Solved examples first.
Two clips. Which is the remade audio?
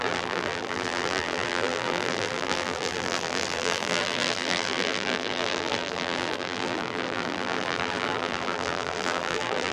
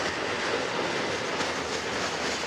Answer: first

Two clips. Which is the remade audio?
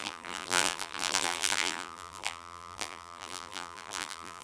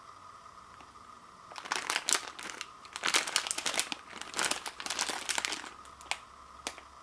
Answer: first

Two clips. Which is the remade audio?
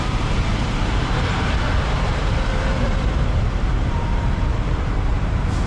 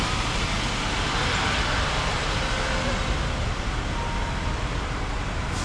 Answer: first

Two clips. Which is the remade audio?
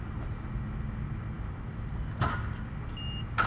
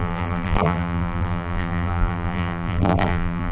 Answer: second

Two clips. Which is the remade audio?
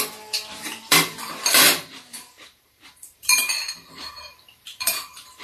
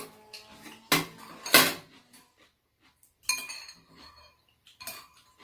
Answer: first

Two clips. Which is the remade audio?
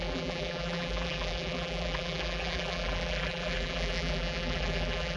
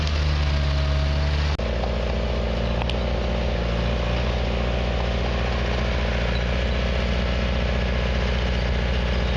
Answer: first